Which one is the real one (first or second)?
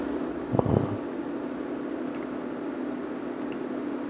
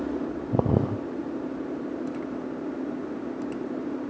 first